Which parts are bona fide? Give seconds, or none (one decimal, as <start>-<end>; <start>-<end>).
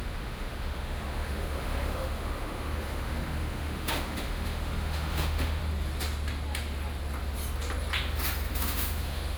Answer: 5.6-8.5